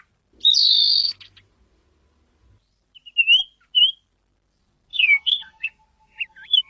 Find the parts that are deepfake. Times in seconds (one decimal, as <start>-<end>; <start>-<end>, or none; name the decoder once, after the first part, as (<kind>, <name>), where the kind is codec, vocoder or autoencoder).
4.9-5.7 (codec, SNAC)